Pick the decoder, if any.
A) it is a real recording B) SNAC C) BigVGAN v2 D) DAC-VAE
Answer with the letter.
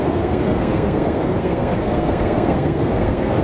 B